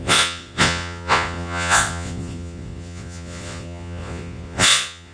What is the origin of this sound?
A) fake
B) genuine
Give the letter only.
A